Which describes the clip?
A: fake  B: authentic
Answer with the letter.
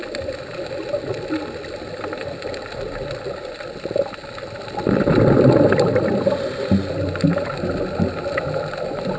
B